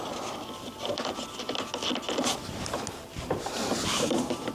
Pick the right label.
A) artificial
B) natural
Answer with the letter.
B